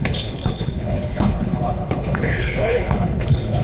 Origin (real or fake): fake